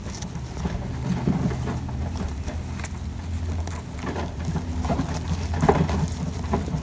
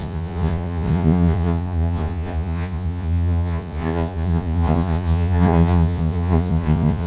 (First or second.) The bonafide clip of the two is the first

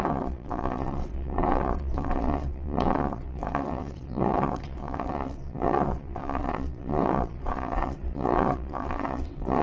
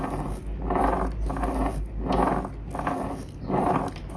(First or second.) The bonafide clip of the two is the second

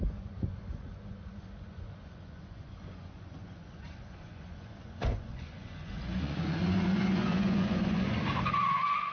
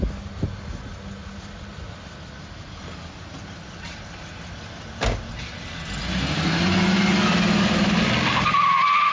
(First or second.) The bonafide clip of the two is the second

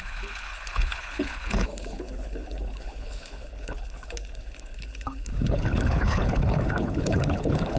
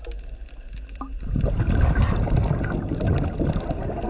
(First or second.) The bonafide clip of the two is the second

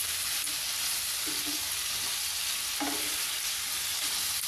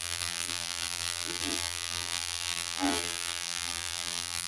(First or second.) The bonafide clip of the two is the first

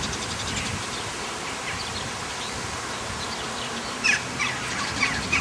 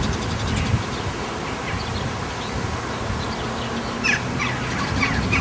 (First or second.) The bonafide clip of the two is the second